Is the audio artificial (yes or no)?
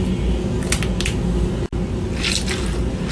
no